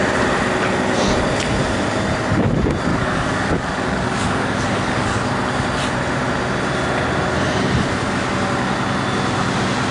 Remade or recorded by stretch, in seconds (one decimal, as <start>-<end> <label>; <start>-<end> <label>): 0.0-2.9 recorded; 2.9-5.3 remade; 5.3-9.9 recorded